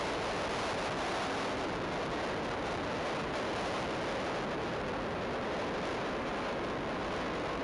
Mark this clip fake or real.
real